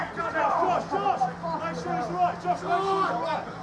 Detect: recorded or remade recorded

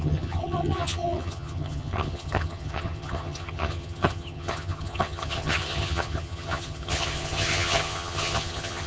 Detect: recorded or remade remade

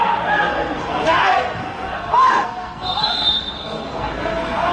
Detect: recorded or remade remade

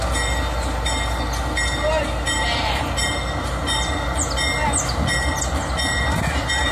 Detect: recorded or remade recorded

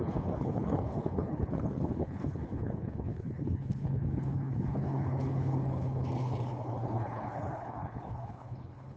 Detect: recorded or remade remade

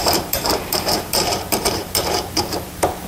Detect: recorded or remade remade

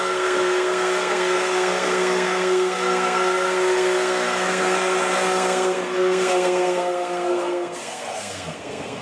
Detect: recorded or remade remade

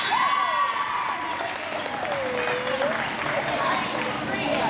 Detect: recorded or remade recorded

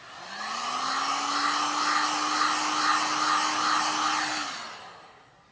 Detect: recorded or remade recorded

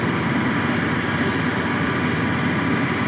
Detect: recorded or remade remade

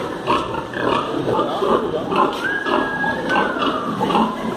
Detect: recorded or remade remade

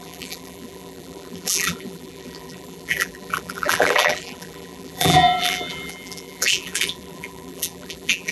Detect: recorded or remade remade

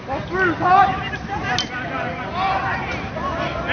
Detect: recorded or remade recorded